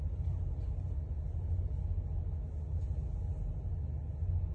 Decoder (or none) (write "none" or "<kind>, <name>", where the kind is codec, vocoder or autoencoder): none